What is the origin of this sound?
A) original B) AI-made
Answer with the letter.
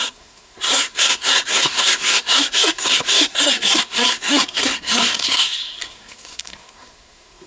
B